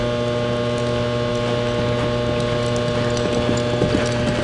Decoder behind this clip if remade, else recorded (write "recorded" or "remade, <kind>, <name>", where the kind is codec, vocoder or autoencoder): recorded